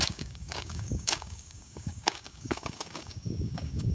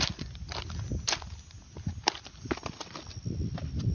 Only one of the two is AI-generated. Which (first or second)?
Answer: first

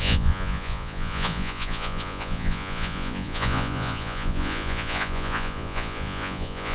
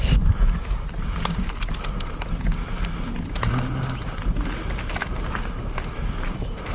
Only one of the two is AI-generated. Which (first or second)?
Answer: first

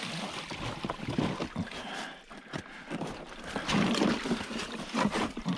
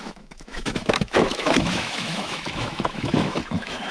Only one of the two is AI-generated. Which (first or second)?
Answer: second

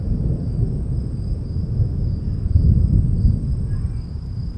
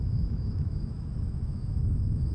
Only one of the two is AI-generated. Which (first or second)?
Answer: second